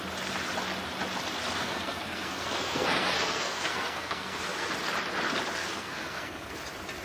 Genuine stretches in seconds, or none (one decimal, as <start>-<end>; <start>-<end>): 0.0-1.6; 4.7-5.6; 6.6-7.0